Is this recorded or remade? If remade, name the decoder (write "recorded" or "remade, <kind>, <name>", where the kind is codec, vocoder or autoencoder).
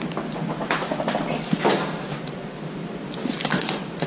recorded